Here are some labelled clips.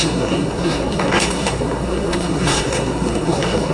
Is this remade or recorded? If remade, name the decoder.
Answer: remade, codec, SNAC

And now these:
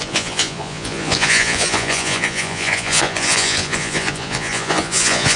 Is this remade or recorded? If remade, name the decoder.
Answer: remade, vocoder, Vocos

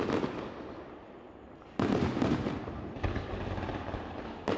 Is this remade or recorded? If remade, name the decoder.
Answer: recorded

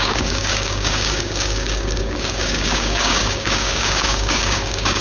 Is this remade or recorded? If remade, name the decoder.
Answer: remade, codec, DAC